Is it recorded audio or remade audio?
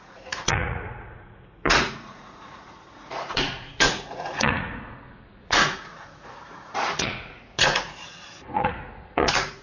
remade